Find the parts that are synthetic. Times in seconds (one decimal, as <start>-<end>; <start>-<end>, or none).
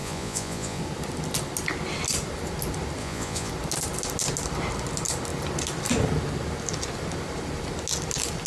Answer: 0.0-0.8; 3.0-3.5